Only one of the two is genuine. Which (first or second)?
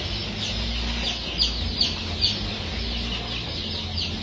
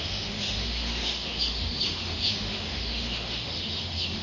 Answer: first